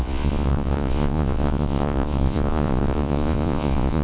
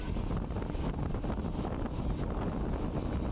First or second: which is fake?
first